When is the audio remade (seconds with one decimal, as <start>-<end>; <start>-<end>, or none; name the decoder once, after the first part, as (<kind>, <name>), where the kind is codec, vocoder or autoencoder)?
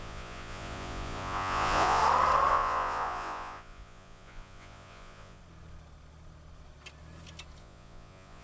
0.0-2.0 (vocoder, Vocos); 2.5-5.4; 7.6-8.4